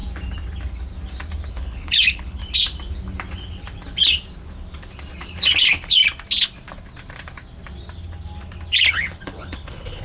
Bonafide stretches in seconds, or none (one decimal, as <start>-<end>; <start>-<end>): 0.0-1.5; 2.4-5.6; 6.0-8.9